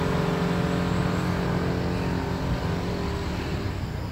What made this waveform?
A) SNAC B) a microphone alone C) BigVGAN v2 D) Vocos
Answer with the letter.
B